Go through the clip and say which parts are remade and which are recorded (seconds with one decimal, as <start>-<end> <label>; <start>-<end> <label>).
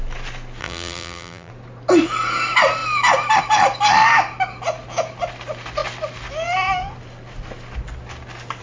0.0-0.6 recorded; 0.6-1.5 remade; 1.5-8.6 recorded